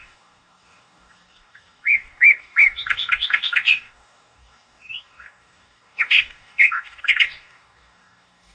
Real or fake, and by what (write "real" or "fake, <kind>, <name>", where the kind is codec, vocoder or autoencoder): fake, codec, DAC